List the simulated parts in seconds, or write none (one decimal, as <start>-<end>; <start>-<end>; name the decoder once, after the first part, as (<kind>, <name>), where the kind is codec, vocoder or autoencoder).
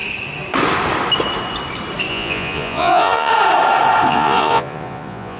2.1-3.3 (vocoder, Vocos); 4.1-5.4